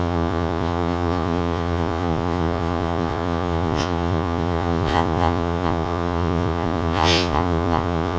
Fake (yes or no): yes